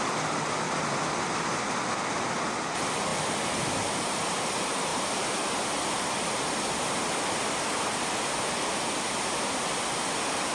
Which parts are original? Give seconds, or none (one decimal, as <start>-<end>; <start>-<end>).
0.0-10.5